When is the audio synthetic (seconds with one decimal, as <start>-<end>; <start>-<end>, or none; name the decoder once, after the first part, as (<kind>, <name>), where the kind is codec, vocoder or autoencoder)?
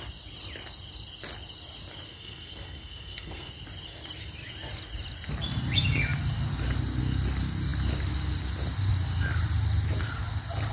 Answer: 2.1-3.5 (codec, SNAC)